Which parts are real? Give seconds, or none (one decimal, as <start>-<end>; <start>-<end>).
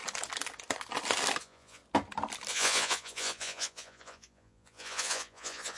0.0-1.4; 1.8-2.5